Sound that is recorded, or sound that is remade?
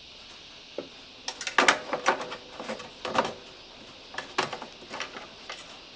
recorded